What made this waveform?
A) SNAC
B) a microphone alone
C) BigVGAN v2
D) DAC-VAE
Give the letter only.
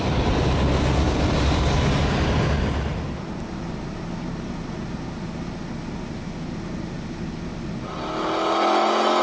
B